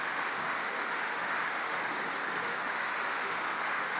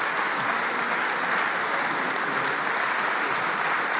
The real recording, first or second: second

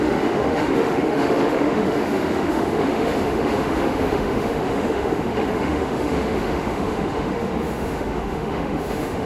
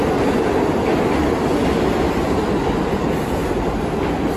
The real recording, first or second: second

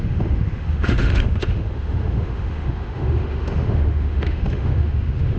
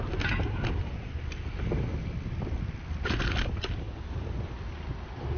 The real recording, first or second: second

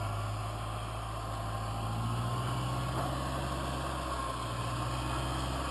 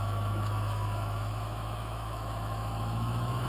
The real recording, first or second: first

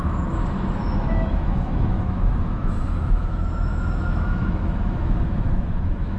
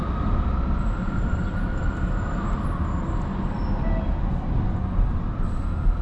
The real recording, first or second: second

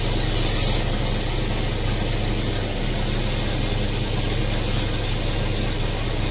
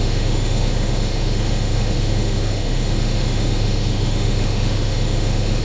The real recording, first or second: first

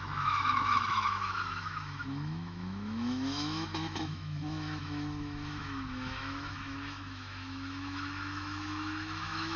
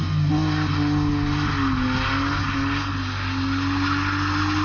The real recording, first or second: second